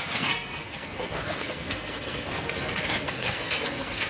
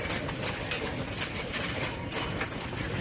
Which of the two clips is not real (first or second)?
first